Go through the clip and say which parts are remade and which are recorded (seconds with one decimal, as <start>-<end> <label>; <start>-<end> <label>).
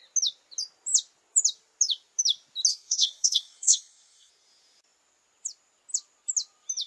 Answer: 0.0-2.7 recorded; 2.7-4.3 remade; 4.3-6.9 recorded